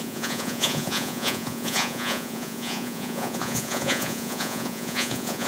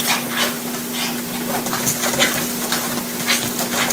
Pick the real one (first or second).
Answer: second